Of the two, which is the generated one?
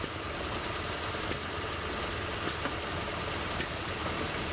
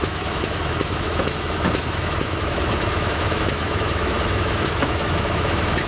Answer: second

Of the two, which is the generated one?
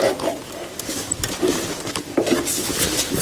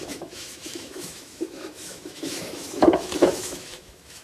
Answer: second